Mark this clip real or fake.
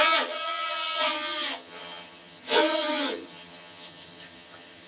fake